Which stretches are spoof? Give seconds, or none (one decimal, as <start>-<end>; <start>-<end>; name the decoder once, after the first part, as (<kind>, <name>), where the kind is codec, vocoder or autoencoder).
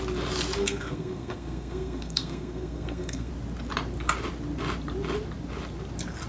0.6-3.3 (codec, SNAC)